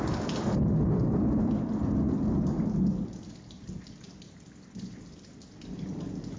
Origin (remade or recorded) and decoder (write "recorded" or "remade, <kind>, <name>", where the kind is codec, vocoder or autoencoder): recorded